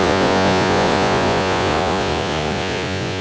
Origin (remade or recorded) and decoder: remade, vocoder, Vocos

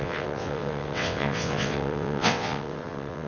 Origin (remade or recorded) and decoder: remade, vocoder, WaveNeXt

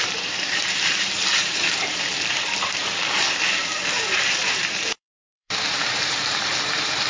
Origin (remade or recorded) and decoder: remade, vocoder, BigVGAN v2